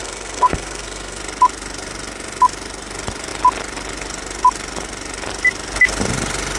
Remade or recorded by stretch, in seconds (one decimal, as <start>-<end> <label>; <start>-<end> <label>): 0.0-1.2 remade; 1.2-6.6 recorded